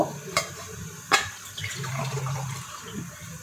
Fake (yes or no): yes